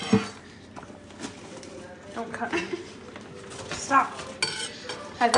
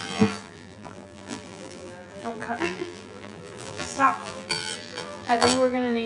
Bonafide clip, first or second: first